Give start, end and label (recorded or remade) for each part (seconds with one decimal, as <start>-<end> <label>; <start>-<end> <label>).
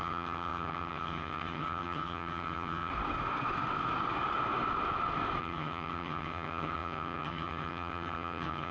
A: 0.0-2.9 remade; 2.9-5.4 recorded; 5.4-8.7 remade